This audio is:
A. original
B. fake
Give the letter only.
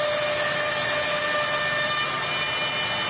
A